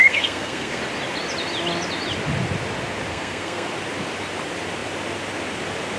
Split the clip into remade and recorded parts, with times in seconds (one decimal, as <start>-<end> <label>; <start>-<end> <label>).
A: 0.0-0.8 remade; 0.8-3.1 recorded; 3.1-3.7 remade; 3.7-6.0 recorded